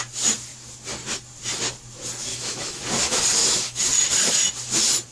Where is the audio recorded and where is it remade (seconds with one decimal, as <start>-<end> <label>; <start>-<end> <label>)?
0.0-2.3 recorded; 2.3-2.8 remade; 2.8-3.4 recorded; 3.4-3.9 remade; 3.9-5.1 recorded